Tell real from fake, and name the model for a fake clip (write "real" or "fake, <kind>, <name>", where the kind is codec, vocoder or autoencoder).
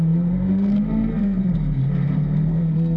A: fake, codec, SNAC